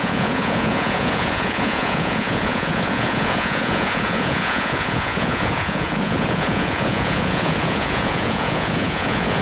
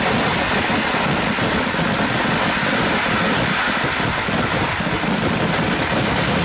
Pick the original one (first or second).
second